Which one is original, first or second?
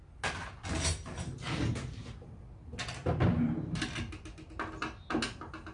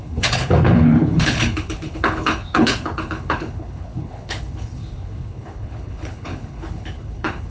first